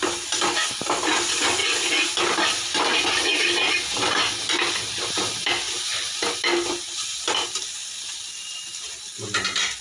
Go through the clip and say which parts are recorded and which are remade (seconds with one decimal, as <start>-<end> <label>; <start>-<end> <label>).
0.0-9.8 recorded